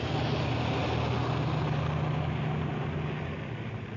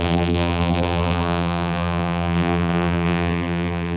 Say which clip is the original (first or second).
first